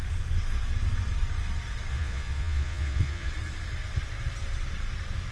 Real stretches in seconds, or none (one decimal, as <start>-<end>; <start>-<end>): 0.0-1.9; 3.3-5.3